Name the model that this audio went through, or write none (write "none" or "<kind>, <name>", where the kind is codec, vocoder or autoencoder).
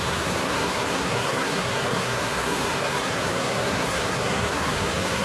codec, SNAC